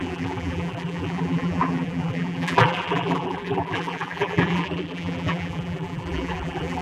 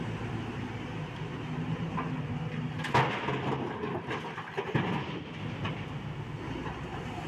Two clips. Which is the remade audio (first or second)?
first